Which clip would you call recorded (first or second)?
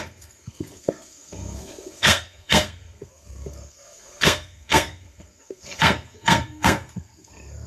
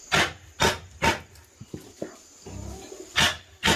second